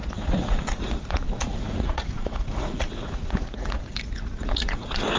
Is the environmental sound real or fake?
fake